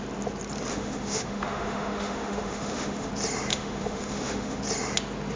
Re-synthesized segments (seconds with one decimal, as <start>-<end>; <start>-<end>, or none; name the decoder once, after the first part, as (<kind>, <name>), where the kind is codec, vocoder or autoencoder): 0.7-3.1 (autoencoder, DAC-VAE); 3.5-4.6

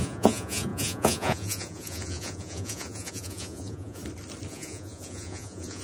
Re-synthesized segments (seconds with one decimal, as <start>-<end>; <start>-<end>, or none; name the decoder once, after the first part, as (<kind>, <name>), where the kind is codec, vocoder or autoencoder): 0.0-4.0 (vocoder, Vocos); 4.5-5.8